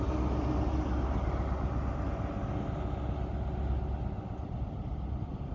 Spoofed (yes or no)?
no